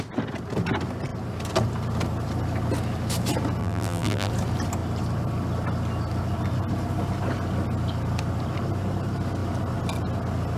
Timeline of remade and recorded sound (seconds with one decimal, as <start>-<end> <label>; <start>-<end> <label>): 0.0-3.6 recorded; 3.6-4.3 remade; 4.3-10.6 recorded